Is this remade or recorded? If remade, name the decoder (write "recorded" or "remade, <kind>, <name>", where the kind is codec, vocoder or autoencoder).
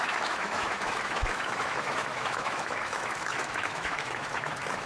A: remade, autoencoder, DAC-VAE